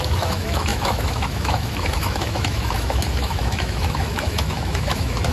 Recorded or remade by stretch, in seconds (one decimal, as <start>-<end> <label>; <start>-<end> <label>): 0.0-5.3 remade